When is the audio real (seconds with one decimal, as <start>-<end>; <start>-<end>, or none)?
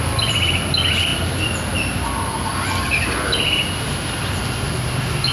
0.0-5.3